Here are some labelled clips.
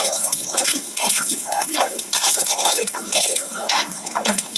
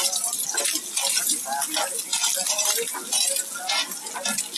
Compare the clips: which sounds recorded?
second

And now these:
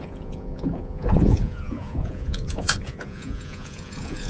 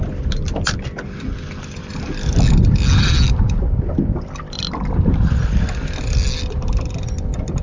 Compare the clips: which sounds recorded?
second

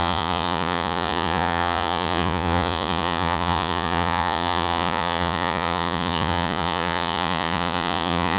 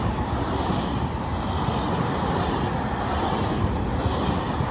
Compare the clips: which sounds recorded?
second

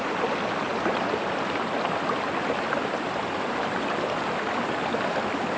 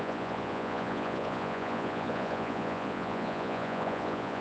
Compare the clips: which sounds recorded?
first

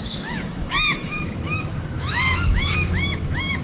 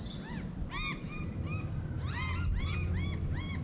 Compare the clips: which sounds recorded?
second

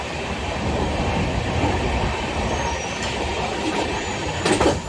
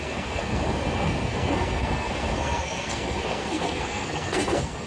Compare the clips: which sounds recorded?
first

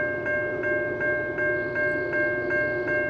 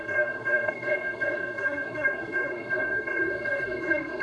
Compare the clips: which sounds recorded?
first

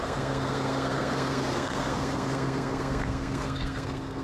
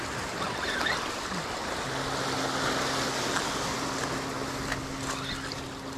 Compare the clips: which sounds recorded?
second